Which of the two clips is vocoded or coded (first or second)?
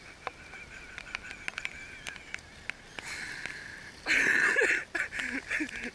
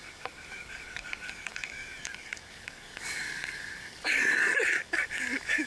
second